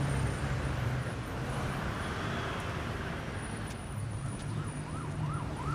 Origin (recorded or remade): remade